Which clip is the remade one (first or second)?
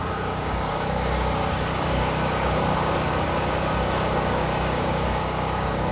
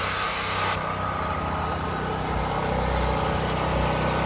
first